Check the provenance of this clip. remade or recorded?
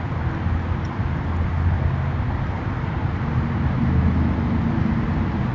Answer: recorded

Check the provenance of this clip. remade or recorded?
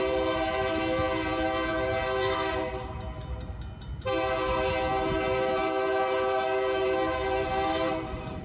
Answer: remade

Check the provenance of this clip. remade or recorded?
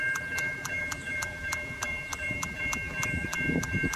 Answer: remade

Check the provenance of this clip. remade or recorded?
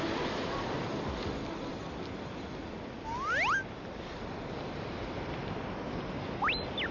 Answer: recorded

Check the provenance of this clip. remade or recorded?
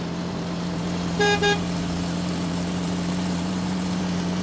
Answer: remade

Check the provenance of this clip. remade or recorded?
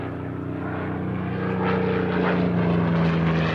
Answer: recorded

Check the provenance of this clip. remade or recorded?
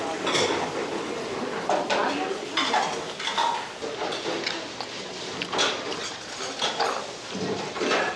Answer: recorded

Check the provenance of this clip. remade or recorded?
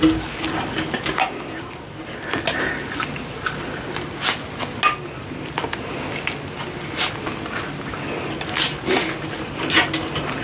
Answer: recorded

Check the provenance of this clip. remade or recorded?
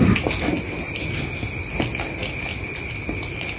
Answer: recorded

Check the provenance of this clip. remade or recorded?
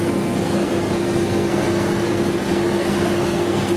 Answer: remade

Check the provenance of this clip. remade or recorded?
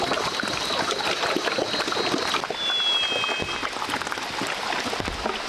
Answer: recorded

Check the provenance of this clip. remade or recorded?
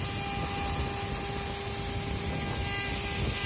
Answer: recorded